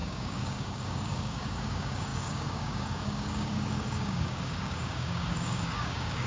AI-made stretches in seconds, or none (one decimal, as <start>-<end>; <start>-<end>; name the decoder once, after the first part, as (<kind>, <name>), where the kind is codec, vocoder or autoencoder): 0.0-6.3 (codec, DAC)